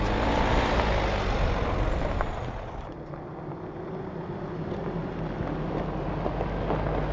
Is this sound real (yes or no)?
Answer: yes